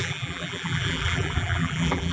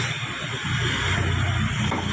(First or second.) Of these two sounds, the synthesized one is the first